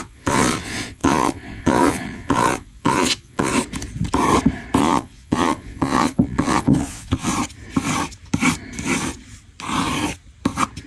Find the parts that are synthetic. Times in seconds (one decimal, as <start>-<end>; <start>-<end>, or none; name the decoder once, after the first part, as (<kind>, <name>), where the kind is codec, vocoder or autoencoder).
0.0-3.5 (vocoder, Vocos); 4.8-7.3